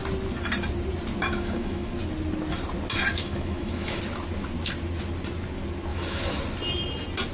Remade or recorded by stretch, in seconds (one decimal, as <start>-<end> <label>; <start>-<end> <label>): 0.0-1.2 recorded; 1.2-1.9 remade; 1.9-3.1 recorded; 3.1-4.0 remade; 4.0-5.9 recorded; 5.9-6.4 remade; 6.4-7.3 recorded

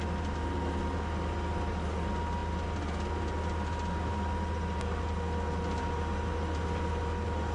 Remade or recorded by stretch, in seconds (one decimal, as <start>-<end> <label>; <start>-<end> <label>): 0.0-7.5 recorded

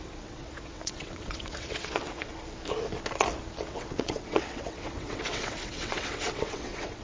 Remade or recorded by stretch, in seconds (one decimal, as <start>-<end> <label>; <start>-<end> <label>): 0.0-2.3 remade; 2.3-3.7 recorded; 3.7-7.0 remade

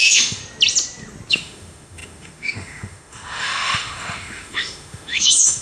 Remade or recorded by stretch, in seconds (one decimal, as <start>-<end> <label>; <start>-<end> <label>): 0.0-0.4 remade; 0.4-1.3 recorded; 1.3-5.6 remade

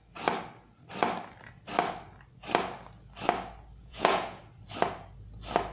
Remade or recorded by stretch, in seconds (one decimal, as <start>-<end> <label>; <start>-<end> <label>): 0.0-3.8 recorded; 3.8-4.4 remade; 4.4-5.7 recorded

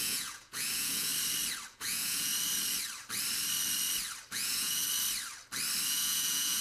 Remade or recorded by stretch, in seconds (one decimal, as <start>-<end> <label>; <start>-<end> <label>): 0.0-1.1 remade; 1.1-1.7 recorded; 1.7-2.3 remade; 2.3-4.3 recorded; 4.3-4.8 remade; 4.8-5.9 recorded; 5.9-6.6 remade

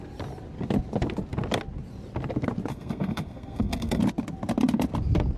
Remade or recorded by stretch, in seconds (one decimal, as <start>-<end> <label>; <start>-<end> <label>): 0.0-2.7 recorded; 2.7-4.0 remade; 4.0-5.4 recorded